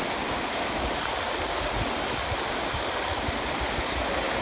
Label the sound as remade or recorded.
recorded